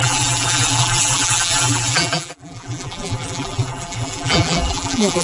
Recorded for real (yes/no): no